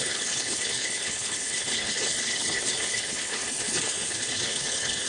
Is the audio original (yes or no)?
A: no